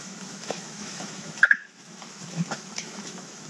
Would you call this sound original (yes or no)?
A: no